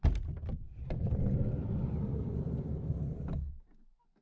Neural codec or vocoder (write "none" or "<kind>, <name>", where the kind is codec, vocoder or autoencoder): none